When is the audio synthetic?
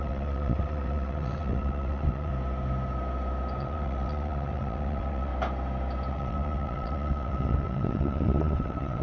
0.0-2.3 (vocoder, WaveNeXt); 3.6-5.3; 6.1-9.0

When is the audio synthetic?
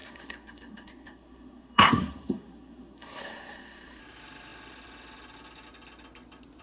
0.0-4.0 (codec, SNAC)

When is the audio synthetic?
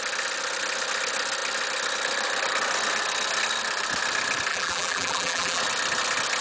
4.5-5.6 (vocoder, BigVGAN v2)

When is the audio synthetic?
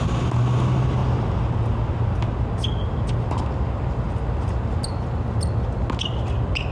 none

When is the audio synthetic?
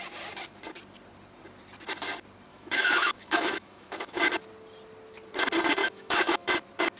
2.5-4.2 (autoencoder, DAC-VAE); 5.8-6.5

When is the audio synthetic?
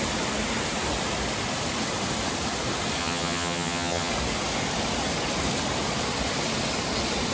3.0-4.1 (vocoder, HiFi-GAN)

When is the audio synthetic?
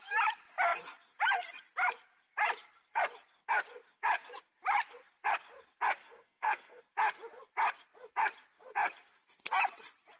6.0-6.8 (codec, SNAC)